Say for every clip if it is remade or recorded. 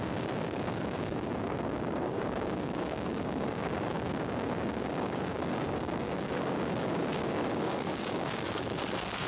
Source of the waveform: remade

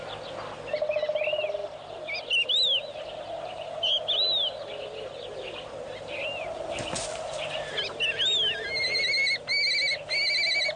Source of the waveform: recorded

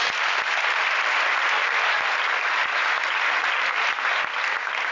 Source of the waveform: recorded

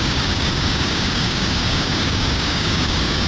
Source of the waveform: remade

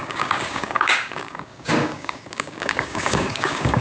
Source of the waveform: remade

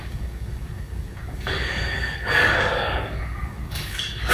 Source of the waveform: remade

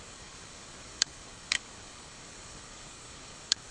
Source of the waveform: remade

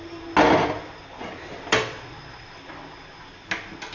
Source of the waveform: recorded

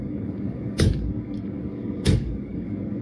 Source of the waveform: remade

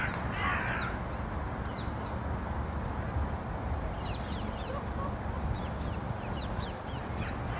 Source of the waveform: recorded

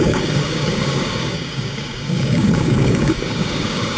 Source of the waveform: remade